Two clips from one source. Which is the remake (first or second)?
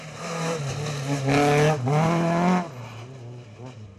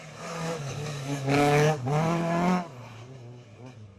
second